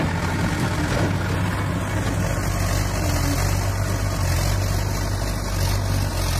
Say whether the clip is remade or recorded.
recorded